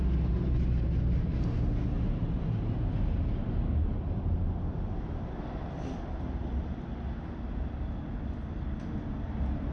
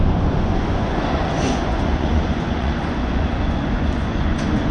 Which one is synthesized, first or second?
second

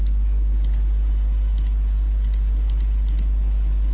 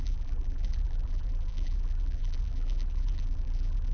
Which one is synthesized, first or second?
second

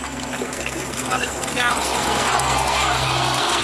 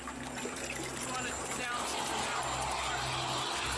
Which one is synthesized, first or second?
first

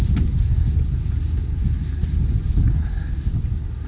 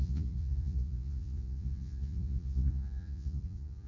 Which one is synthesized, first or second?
second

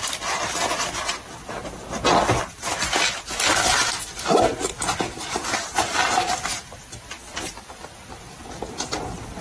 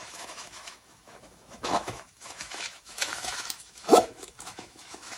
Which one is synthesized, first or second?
second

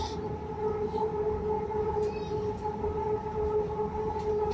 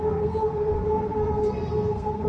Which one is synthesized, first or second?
second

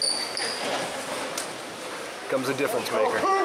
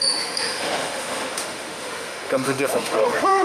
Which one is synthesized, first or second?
second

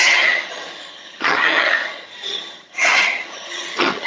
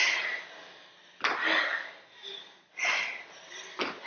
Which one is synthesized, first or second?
first